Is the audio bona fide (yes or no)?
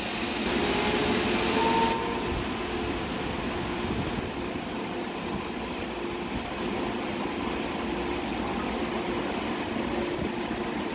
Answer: yes